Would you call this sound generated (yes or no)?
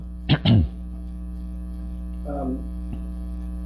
no